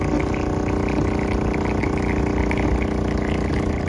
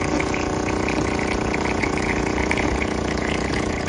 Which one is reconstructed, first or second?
second